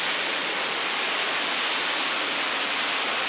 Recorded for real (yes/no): yes